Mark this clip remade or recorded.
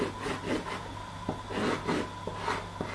recorded